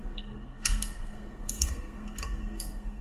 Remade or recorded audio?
remade